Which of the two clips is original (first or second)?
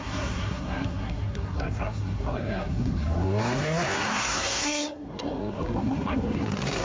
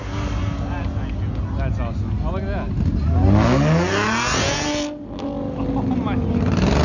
second